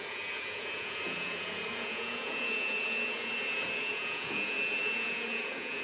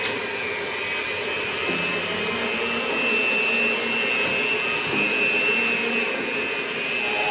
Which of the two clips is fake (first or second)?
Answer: first